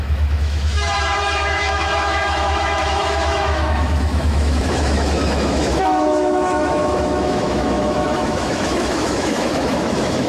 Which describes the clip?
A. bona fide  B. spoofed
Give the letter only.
B